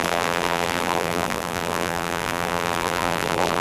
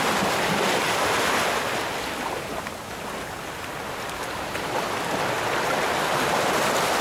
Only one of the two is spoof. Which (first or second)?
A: first